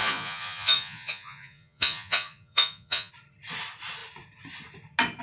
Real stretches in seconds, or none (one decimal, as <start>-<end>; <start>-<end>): 3.1-5.2